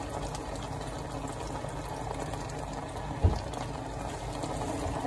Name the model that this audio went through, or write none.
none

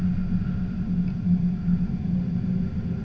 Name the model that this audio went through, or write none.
none